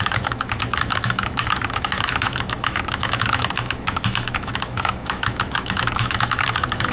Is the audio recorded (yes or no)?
no